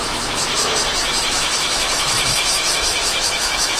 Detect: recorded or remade remade